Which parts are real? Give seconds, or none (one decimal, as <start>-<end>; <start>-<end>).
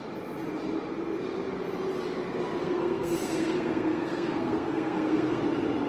0.0-2.6; 5.4-5.9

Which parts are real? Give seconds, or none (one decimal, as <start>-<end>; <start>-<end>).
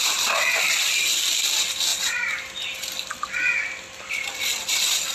0.0-5.1